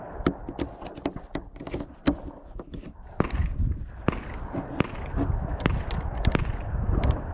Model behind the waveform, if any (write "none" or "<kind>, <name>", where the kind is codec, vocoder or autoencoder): none